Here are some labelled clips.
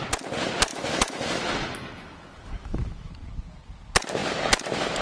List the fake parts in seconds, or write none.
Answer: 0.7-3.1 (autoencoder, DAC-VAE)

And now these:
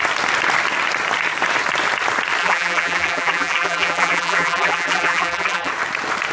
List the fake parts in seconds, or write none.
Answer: 2.4-5.7 (vocoder, BigVGAN v2)

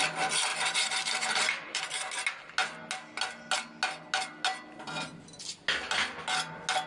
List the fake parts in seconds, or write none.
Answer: 0.5-2.0 (vocoder, BigVGAN v2)

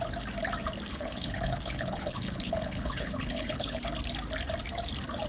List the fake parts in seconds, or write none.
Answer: 0.9-3.8 (codec, HILCodec)

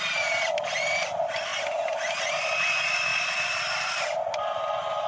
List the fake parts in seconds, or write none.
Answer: none

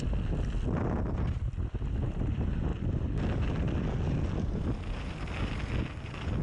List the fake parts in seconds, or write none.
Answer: none